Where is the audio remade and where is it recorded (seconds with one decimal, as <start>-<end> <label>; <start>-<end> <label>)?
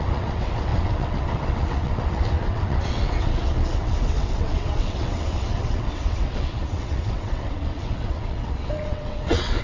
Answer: 0.0-9.6 remade